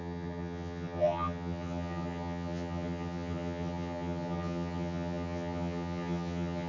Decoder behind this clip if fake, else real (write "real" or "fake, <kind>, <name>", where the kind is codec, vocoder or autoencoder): fake, vocoder, HiFi-GAN